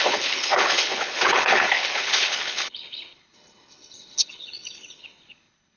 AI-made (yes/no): yes